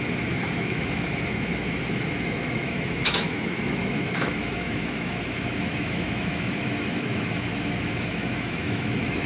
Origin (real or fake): fake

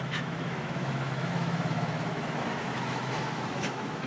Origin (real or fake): fake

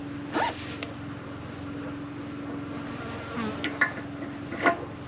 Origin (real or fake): real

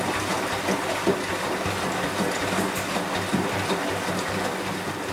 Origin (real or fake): real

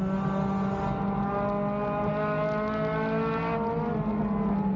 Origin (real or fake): real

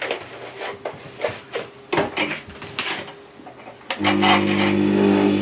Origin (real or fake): real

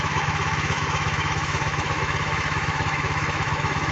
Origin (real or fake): fake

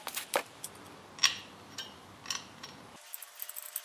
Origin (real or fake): real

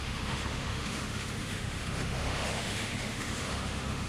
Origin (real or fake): fake